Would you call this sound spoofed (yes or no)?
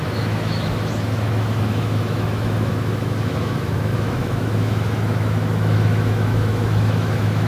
yes